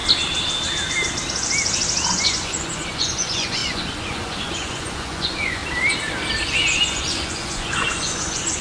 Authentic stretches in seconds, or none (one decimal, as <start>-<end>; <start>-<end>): 0.0-2.1; 5.6-6.5